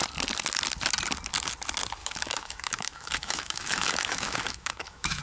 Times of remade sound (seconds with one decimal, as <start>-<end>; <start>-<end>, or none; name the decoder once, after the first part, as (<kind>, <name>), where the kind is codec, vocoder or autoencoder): 2.0-5.2 (autoencoder, DAC-VAE)